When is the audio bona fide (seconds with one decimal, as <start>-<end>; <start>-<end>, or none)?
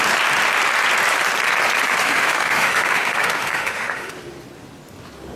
0.0-2.0; 4.1-5.4